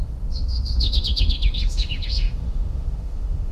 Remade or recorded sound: remade